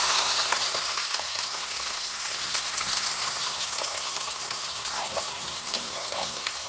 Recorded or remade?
remade